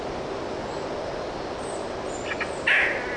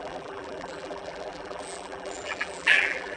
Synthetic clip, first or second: second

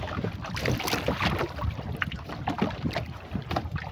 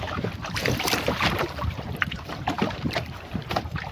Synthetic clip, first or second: second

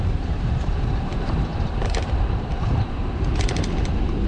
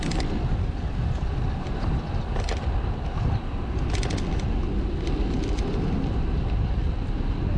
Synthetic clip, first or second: first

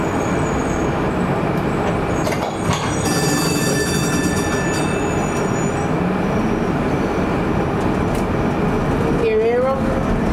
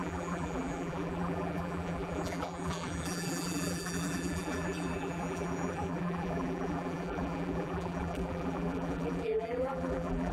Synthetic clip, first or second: second